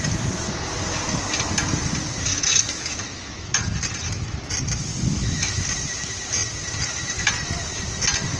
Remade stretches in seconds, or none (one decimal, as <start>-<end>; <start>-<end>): 2.3-3.5; 4.9-5.7